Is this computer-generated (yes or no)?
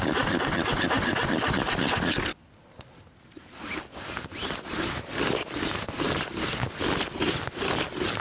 no